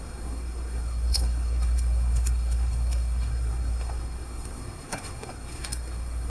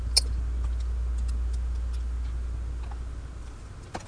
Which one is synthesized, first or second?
first